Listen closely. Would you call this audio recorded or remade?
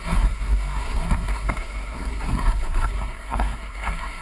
remade